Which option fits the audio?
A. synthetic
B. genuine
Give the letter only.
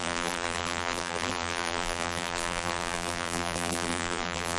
A